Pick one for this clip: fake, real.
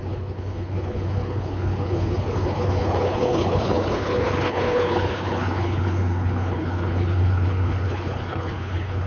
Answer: fake